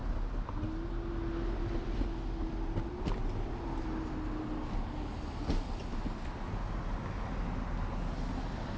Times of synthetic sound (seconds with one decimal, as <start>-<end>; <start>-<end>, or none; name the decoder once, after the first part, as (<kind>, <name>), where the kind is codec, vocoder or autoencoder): none